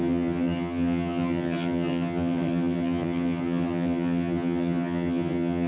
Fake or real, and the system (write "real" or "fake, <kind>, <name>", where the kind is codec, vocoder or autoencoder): fake, vocoder, HiFi-GAN